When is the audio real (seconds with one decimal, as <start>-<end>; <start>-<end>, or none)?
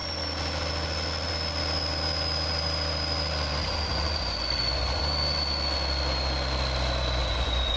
0.0-3.6; 5.0-7.2